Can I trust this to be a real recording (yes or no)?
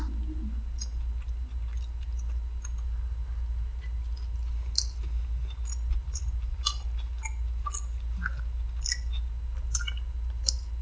yes